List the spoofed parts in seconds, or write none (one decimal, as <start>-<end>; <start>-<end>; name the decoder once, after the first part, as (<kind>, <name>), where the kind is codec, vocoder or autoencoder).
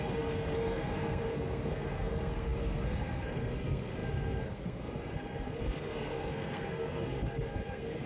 0.0-8.1 (codec, SNAC)